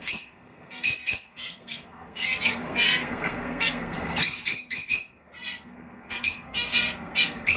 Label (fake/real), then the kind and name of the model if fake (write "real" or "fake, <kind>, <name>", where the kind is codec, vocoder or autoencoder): fake, codec, SNAC